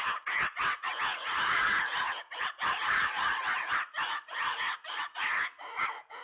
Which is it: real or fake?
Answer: fake